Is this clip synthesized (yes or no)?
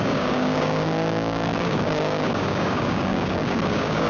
yes